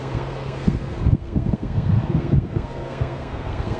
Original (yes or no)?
no